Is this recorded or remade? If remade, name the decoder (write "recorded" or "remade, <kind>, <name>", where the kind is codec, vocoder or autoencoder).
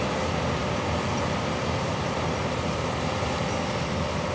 recorded